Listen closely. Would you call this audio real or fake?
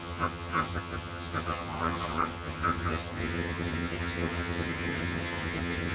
fake